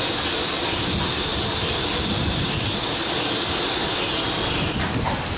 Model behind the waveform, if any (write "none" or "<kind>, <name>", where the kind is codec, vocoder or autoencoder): none